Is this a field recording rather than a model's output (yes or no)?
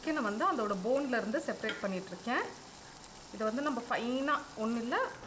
yes